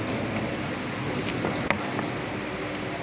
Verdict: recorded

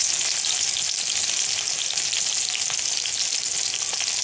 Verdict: recorded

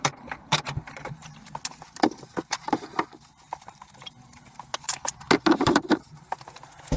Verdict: remade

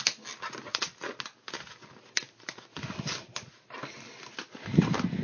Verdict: recorded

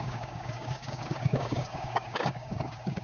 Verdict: remade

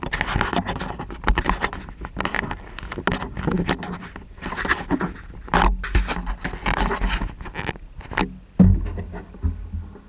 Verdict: recorded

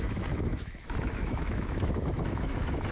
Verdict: remade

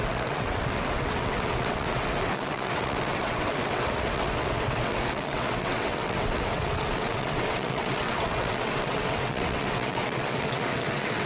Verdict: remade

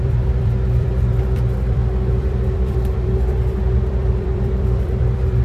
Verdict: remade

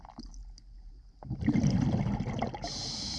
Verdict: recorded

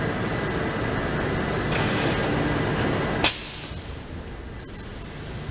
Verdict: recorded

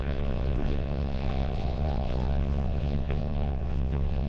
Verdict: remade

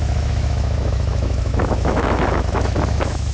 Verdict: remade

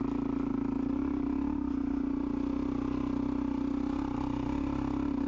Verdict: recorded